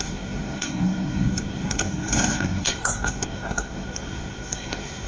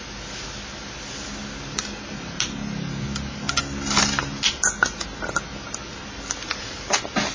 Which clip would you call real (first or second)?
second